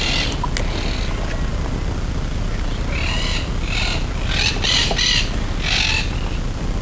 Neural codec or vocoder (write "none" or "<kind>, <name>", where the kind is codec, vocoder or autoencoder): none